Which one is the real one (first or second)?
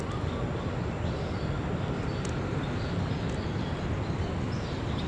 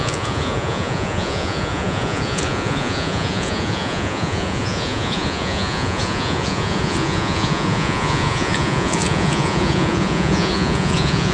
first